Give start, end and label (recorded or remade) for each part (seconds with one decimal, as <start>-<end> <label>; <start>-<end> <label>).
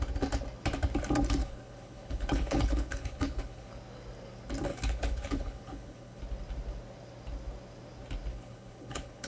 0.0-1.4 recorded; 1.4-3.7 remade; 3.7-4.7 recorded; 4.7-6.2 remade; 6.2-8.3 recorded; 8.3-9.3 remade